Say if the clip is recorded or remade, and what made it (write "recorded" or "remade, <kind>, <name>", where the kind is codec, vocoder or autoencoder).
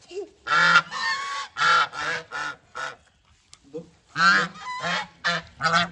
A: recorded